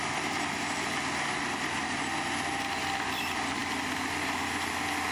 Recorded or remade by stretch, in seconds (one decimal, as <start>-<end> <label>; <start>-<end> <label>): 0.0-5.1 recorded